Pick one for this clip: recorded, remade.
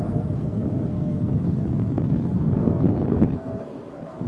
remade